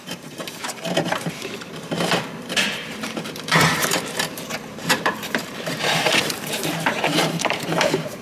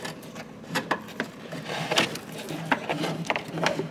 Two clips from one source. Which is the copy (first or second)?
first